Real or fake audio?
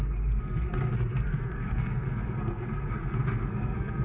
fake